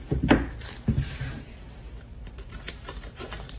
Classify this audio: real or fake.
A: fake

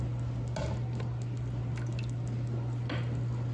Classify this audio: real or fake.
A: real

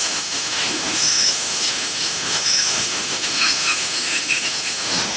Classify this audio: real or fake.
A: fake